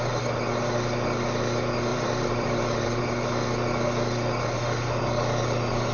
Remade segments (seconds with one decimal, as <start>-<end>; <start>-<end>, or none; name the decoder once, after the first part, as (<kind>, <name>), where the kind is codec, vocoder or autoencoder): 1.9-3.0 (vocoder, BigVGAN v2)